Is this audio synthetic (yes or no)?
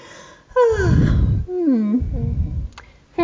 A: no